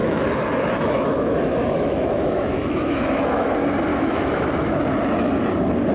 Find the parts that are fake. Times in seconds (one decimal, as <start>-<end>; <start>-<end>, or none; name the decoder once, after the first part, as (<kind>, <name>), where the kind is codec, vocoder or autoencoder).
0.0-3.5 (autoencoder, DAC-VAE); 3.9-4.8